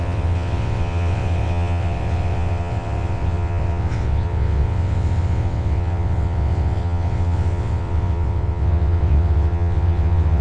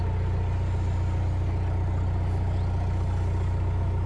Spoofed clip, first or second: first